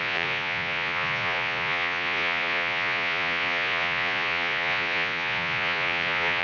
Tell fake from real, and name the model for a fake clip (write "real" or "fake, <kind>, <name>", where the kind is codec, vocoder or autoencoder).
fake, vocoder, Vocos